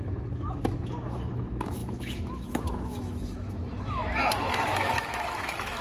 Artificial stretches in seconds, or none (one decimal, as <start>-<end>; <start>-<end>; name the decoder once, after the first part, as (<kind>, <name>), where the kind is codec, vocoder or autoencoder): 0.0-5.8 (autoencoder, DAC-VAE)